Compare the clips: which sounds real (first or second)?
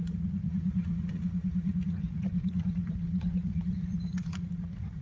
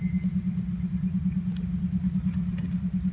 second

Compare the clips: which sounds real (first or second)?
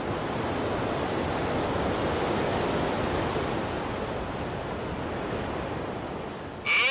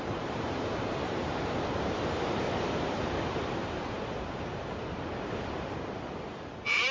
first